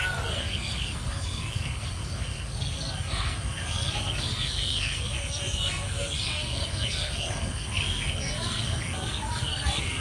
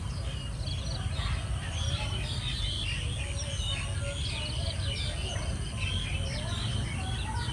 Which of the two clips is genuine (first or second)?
second